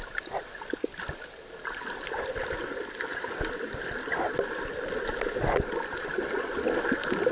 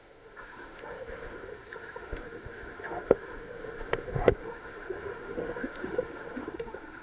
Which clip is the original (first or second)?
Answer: first